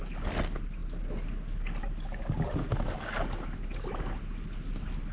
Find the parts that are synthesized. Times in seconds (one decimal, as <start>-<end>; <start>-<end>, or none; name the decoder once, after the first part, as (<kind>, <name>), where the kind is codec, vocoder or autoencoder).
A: none